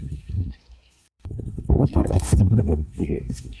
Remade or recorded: remade